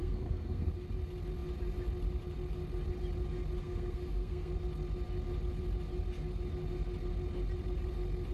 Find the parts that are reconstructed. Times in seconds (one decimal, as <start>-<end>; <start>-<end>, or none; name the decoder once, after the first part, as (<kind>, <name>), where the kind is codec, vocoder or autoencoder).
0.0-0.7 (codec, SNAC); 3.6-4.5